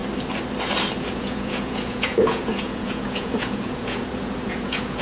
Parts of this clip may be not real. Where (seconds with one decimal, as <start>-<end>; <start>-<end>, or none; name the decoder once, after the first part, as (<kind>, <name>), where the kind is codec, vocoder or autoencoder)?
1.0-5.0 (vocoder, Vocos)